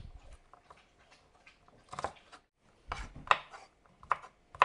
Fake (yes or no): no